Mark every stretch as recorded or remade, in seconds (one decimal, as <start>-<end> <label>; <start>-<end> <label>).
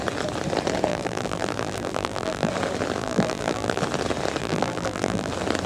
0.0-0.9 recorded; 0.9-2.5 remade; 2.5-3.0 recorded; 3.0-3.8 remade; 3.8-4.4 recorded; 4.4-5.3 remade; 5.3-5.7 recorded